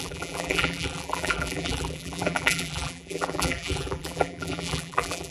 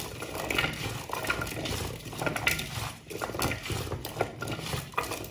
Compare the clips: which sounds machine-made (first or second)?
first